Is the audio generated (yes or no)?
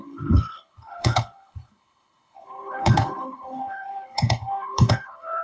yes